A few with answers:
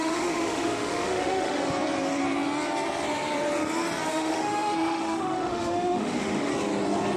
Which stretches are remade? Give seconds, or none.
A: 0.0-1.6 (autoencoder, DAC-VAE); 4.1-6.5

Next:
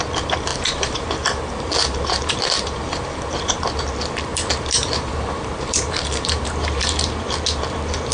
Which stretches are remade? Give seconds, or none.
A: 0.5-3.8 (vocoder, BigVGAN v2); 4.3-7.1

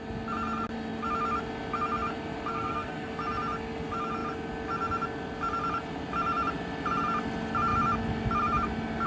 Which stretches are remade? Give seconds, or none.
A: 2.5-3.1 (codec, SNAC)

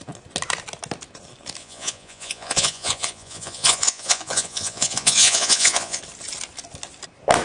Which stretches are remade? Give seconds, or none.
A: 1.6-6.0 (vocoder, Vocos)